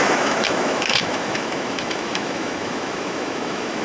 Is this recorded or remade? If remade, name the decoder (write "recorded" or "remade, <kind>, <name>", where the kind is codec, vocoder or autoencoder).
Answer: remade, autoencoder, DAC-VAE